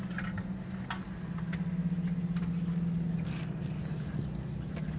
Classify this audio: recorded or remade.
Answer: recorded